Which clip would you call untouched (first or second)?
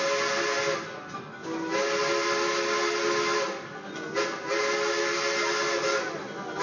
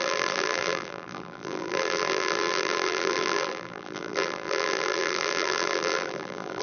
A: first